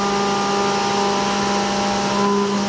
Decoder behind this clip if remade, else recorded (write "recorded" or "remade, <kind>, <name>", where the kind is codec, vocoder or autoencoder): recorded